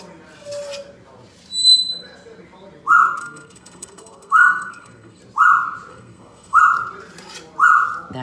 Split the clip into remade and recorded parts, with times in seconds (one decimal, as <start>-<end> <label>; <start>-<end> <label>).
0.0-3.2 recorded; 3.2-5.2 remade; 5.2-5.9 recorded; 5.9-6.6 remade; 6.6-8.2 recorded